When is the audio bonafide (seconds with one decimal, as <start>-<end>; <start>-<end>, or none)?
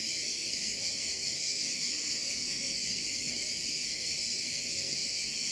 none